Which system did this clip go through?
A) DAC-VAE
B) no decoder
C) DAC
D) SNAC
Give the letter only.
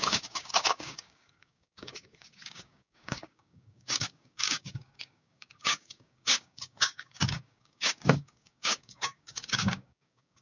C